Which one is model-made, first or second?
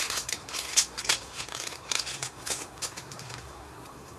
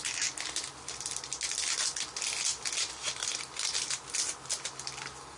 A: first